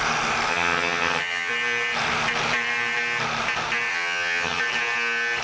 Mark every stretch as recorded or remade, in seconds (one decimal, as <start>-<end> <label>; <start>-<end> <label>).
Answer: 0.0-0.5 recorded; 0.5-1.5 remade; 1.5-3.9 recorded; 3.9-4.6 remade; 4.6-5.4 recorded